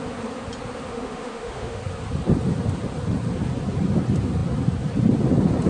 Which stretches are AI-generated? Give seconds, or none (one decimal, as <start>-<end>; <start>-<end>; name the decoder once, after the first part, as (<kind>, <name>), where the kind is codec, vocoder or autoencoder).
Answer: 0.9-1.8 (autoencoder, DAC-VAE)